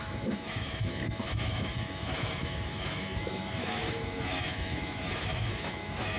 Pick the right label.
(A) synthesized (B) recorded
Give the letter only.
A